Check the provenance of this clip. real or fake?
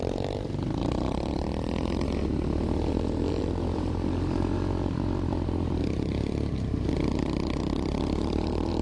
fake